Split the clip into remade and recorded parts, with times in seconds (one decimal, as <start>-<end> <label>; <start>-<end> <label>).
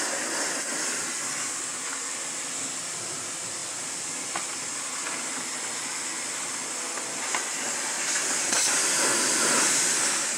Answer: 0.0-10.4 recorded